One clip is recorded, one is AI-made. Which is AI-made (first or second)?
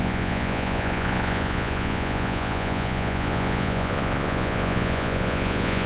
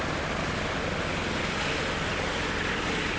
first